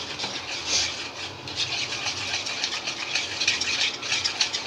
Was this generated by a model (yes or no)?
no